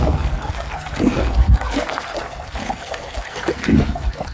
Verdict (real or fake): fake